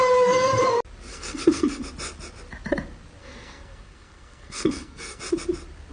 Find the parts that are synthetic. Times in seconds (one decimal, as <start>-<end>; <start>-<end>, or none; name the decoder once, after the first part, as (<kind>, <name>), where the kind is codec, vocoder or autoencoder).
1.1-1.8 (codec, SNAC); 3.2-5.2